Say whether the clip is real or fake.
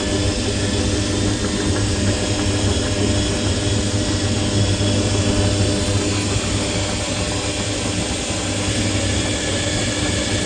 real